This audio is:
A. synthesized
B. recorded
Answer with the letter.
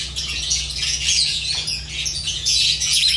A